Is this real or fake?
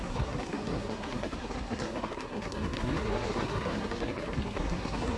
fake